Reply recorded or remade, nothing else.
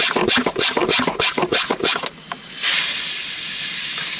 recorded